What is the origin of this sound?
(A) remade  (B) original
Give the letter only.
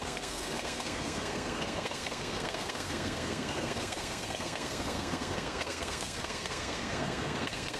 A